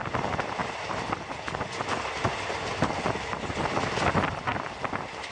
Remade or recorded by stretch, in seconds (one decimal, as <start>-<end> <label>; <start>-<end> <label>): 0.0-4.5 recorded; 4.5-5.3 remade